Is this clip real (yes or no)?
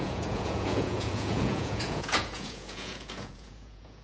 no